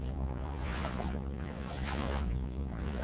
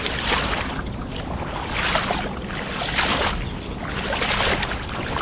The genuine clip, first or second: second